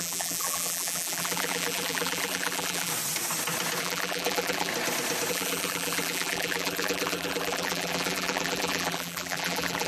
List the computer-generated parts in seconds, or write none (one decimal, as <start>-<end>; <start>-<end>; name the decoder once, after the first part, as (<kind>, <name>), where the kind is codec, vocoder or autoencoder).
0.0-2.9 (vocoder, BigVGAN v2); 3.8-4.7; 5.3-9.9